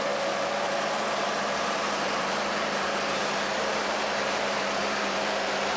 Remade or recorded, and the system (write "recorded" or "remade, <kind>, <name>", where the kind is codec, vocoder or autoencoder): remade, vocoder, BigVGAN v2